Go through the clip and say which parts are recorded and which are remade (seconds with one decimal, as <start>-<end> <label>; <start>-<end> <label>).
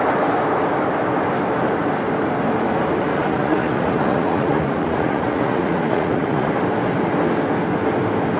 0.0-3.1 recorded; 3.1-6.5 remade; 6.5-8.4 recorded